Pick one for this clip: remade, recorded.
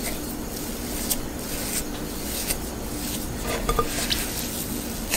recorded